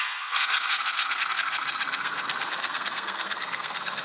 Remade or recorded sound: remade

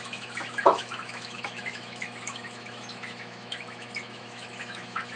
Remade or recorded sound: remade